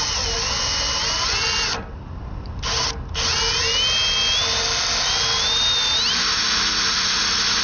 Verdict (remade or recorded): recorded